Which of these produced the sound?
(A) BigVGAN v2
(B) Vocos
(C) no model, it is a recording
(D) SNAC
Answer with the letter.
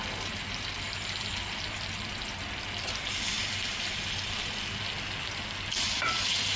C